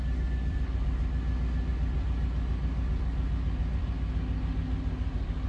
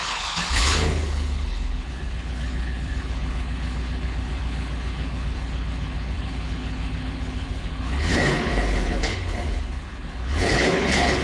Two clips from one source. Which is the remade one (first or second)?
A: second